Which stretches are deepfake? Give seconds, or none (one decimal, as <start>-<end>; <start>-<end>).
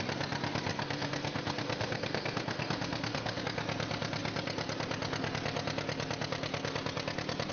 0.7-3.4